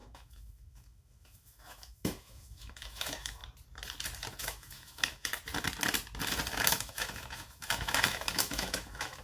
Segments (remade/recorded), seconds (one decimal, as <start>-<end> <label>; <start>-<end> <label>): 0.0-3.4 remade; 3.4-4.4 recorded; 4.4-5.3 remade; 5.3-6.5 recorded; 6.5-9.2 remade